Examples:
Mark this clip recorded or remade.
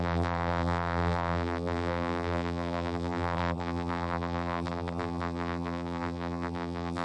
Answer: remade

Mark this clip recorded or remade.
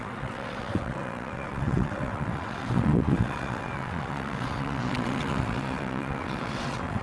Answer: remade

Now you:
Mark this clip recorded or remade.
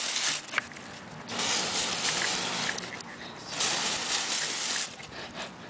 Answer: recorded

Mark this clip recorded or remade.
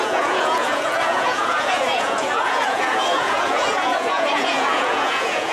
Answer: remade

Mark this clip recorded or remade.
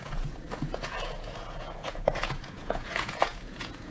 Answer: remade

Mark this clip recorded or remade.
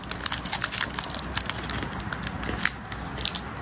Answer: recorded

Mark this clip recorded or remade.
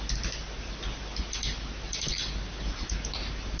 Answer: recorded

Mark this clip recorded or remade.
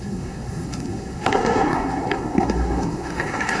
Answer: remade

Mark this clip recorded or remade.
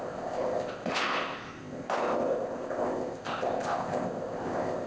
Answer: remade